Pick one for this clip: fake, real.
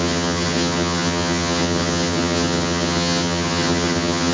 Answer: fake